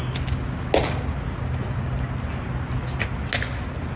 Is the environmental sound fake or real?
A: real